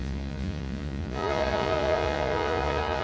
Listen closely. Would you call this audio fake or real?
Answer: fake